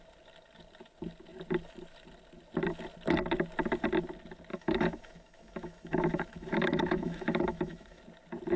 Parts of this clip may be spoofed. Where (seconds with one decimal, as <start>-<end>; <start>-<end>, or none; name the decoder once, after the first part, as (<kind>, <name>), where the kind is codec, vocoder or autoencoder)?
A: 4.5-8.0 (autoencoder, DAC-VAE)